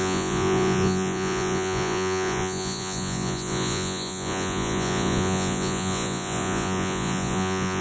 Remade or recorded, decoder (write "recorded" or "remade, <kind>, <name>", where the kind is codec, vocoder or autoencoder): remade, vocoder, Vocos